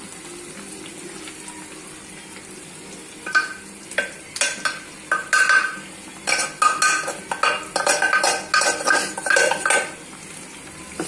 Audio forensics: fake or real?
real